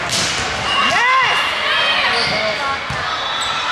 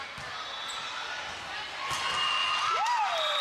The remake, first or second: second